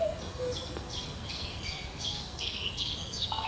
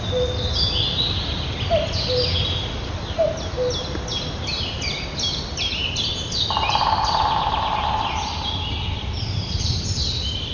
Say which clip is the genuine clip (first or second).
second